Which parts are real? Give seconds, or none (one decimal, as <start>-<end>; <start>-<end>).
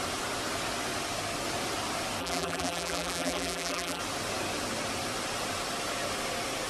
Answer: 0.0-2.2; 4.0-6.7